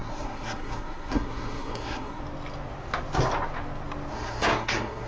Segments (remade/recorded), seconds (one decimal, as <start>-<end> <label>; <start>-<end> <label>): 0.0-2.2 remade; 2.2-4.1 recorded; 4.1-5.1 remade